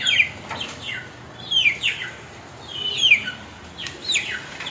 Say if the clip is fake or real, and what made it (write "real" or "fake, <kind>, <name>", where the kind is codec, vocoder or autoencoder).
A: real